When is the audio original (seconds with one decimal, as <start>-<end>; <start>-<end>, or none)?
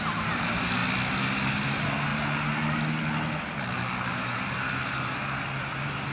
0.8-1.7; 2.1-4.1